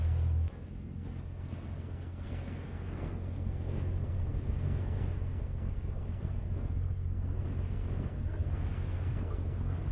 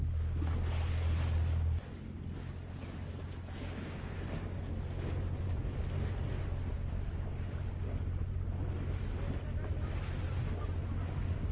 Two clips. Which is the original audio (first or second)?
second